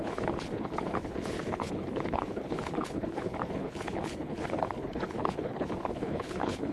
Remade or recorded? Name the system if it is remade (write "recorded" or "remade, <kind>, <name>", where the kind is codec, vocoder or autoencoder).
remade, codec, HILCodec